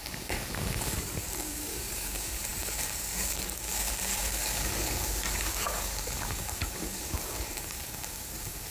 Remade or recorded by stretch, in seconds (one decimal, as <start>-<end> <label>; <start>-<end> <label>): 0.0-8.7 remade